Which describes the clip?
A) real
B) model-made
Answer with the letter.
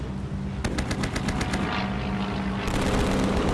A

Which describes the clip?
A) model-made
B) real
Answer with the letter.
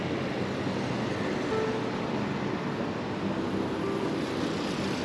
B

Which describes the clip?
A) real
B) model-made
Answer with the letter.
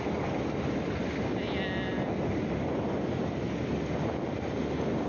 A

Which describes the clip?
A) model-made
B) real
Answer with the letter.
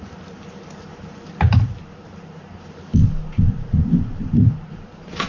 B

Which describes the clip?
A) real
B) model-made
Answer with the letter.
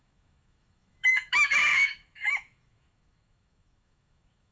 B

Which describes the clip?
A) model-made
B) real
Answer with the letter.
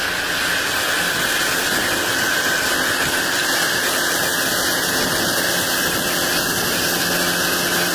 B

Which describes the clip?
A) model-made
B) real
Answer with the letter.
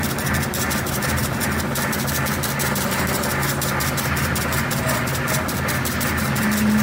B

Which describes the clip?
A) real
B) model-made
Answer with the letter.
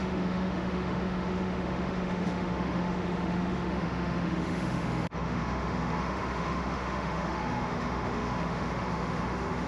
B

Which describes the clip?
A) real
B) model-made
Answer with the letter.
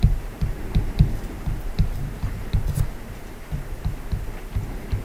A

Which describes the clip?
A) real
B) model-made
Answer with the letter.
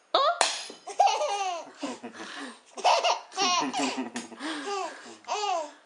A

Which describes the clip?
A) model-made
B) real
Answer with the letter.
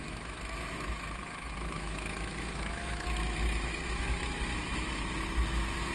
A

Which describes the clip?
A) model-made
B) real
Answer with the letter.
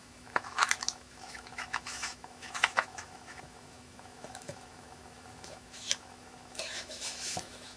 A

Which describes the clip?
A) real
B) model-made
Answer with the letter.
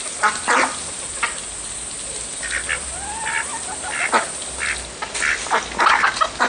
A